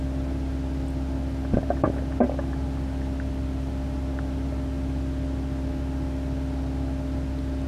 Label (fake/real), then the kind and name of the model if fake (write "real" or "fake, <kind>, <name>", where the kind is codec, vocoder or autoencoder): real